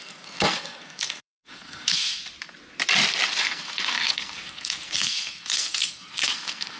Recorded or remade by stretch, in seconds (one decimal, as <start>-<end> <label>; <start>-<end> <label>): 0.0-2.2 remade; 2.2-3.4 recorded; 3.4-6.8 remade